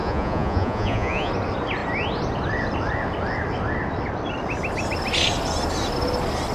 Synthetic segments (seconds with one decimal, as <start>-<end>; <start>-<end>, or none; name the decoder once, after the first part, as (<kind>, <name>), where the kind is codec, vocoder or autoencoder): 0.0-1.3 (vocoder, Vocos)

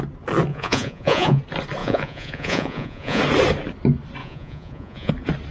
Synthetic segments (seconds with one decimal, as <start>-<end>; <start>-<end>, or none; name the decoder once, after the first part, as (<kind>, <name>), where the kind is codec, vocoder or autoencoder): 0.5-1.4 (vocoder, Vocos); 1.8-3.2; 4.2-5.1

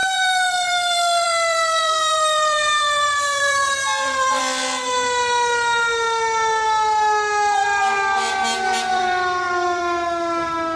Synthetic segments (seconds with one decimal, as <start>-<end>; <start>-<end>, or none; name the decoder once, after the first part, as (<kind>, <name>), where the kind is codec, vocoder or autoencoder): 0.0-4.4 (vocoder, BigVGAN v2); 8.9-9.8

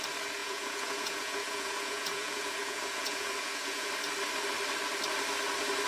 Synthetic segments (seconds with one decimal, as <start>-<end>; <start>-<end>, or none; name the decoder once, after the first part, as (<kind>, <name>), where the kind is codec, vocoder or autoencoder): 0.4-3.9 (vocoder, Vocos)

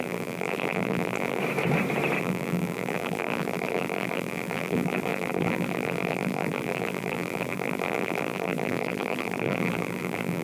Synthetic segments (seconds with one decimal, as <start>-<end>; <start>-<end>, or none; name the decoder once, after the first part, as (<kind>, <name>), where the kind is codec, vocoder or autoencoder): 0.0-1.4 (vocoder, BigVGAN v2); 2.2-10.4

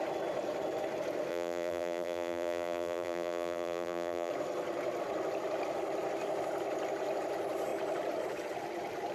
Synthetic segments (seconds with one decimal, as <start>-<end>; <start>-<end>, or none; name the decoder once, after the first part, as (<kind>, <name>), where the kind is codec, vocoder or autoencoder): 1.3-4.3 (vocoder, BigVGAN v2)

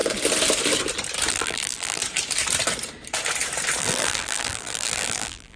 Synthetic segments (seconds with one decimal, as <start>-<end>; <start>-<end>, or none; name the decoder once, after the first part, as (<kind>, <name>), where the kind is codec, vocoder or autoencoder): 1.3-2.0 (vocoder, BigVGAN v2); 3.8-5.6